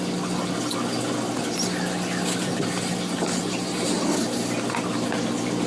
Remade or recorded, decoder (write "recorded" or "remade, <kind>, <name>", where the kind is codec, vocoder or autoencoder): recorded